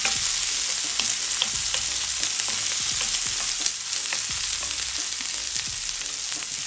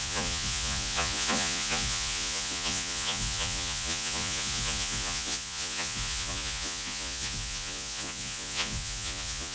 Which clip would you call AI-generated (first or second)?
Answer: second